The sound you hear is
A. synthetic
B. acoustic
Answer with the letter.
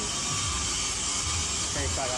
B